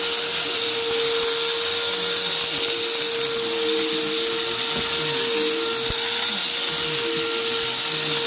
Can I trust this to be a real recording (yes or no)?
yes